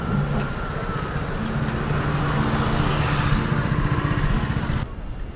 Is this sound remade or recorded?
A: recorded